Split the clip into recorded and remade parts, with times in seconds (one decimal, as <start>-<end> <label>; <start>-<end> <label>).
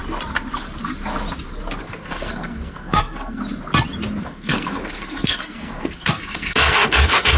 0.0-1.8 recorded; 1.8-3.4 remade; 3.4-4.2 recorded; 4.2-7.4 remade